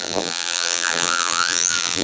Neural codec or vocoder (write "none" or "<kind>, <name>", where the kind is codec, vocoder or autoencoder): vocoder, BigVGAN v2